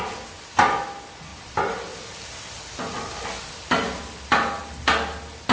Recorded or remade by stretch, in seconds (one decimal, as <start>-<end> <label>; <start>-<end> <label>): 0.0-1.3 recorded; 1.3-2.6 remade; 2.6-5.5 recorded